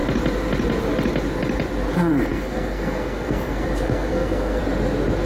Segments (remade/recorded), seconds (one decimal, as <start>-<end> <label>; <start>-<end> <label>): 0.0-1.9 recorded; 1.9-4.6 remade; 4.6-5.3 recorded

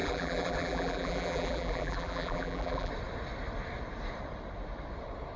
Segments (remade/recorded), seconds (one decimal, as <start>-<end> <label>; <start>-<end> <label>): 0.0-2.9 remade; 2.9-5.4 recorded

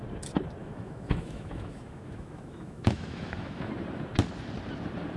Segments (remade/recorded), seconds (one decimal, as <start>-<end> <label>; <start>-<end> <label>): 0.0-0.6 recorded; 0.6-3.7 remade; 3.7-5.2 recorded

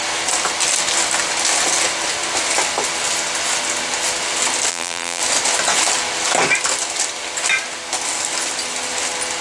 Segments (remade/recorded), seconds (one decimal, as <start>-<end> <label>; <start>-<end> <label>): 0.0-4.7 recorded; 4.7-5.2 remade; 5.2-9.4 recorded